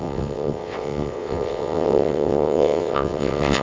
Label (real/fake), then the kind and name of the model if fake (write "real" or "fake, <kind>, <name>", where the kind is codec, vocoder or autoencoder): fake, vocoder, WaveNeXt